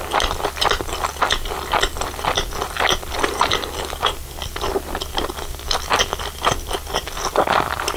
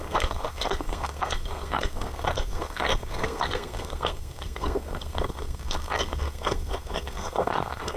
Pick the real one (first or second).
first